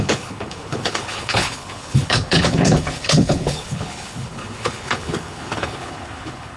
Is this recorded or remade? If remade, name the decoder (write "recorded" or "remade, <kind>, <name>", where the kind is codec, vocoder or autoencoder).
remade, codec, HILCodec